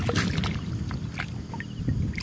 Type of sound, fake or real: real